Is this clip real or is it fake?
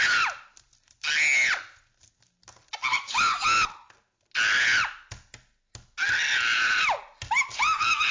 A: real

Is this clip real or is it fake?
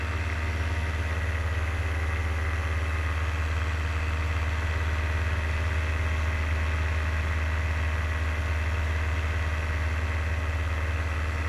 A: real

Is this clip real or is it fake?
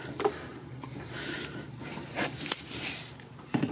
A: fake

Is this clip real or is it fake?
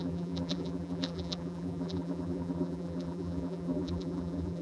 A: fake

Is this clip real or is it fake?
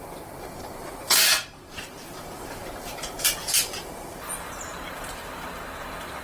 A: fake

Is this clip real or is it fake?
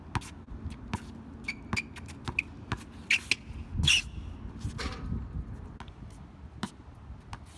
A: real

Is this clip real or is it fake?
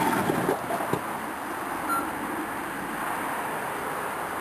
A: real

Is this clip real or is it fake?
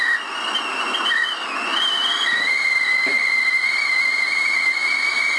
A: real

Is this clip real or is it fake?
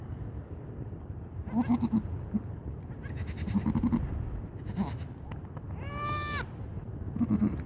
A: real